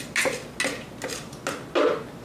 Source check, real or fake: real